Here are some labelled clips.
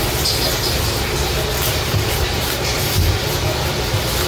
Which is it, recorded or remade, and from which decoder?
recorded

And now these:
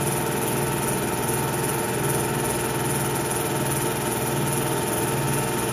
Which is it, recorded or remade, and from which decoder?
recorded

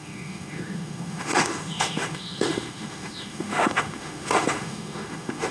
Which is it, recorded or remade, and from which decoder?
remade, autoencoder, DAC-VAE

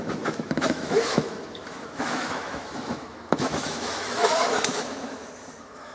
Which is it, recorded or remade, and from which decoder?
remade, autoencoder, DAC-VAE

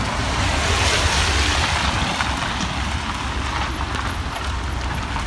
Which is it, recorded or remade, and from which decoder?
recorded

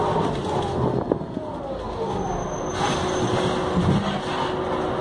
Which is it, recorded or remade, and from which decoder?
recorded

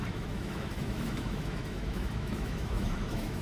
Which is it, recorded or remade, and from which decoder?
remade, autoencoder, DAC-VAE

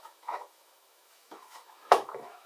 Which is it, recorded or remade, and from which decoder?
remade, autoencoder, DAC-VAE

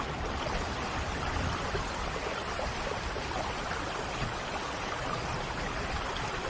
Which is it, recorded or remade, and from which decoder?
recorded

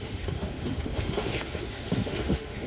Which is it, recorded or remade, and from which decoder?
remade, autoencoder, DAC-VAE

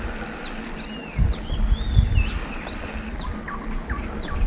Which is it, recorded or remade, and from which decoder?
recorded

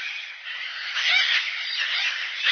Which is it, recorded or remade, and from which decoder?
recorded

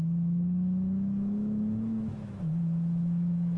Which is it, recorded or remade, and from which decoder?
remade, autoencoder, DAC-VAE